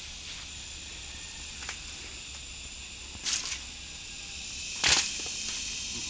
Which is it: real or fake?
real